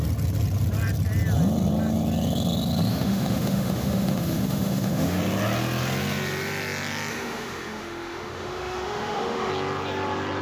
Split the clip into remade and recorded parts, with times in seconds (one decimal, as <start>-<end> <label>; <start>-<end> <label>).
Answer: 0.0-2.9 recorded; 2.9-5.2 remade; 5.2-7.1 recorded; 7.1-9.5 remade; 9.5-10.4 recorded